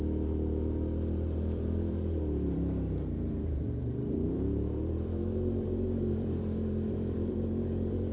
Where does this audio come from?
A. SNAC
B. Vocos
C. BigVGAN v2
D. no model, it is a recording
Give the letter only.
C